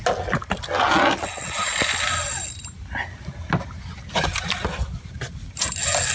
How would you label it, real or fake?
real